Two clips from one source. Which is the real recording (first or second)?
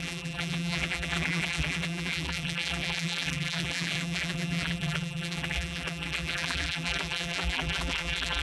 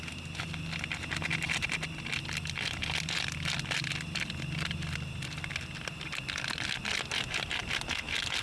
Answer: second